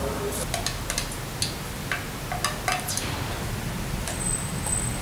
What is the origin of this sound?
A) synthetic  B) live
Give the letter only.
B